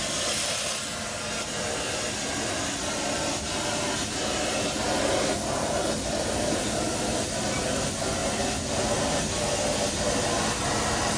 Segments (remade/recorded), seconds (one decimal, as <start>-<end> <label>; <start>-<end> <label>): 0.0-11.2 recorded